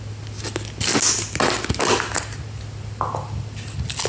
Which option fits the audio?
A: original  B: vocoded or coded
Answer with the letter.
A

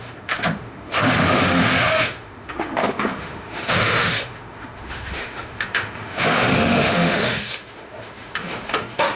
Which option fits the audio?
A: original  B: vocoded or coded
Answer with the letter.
B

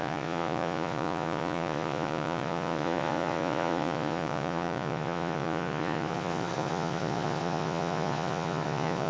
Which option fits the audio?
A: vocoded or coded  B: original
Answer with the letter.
A